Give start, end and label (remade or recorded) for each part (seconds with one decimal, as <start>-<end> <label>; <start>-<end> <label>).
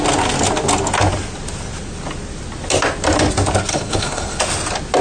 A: 0.0-3.7 recorded; 3.7-4.4 remade; 4.4-5.0 recorded